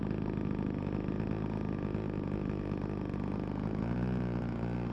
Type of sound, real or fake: real